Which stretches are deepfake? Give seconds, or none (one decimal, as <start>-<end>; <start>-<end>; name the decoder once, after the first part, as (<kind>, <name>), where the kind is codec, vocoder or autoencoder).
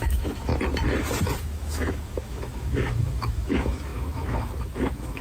0.0-0.5 (autoencoder, DAC-VAE); 1.4-5.2